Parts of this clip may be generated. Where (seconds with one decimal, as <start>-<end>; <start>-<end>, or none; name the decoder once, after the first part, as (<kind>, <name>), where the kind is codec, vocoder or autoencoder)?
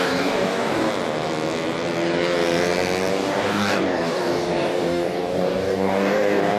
0.0-0.9 (codec, DAC); 3.1-6.6